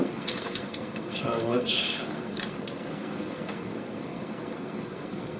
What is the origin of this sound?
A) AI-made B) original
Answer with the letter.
A